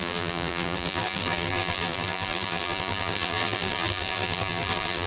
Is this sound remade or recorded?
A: remade